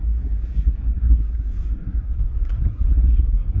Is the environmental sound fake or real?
fake